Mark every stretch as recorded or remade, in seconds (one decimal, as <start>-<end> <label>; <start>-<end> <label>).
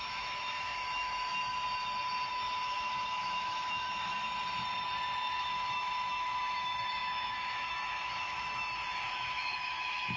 0.0-1.3 remade; 1.3-2.3 recorded; 2.3-4.1 remade; 4.1-5.4 recorded; 5.4-10.2 remade